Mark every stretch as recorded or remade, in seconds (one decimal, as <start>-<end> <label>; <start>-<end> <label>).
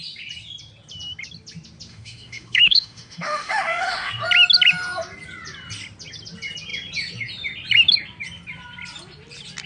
0.0-1.9 recorded; 1.9-4.1 remade; 4.1-9.7 recorded